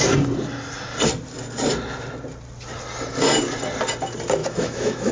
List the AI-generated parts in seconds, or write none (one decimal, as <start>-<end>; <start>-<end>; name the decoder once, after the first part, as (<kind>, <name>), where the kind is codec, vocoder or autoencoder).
4.4-5.1 (autoencoder, DAC-VAE)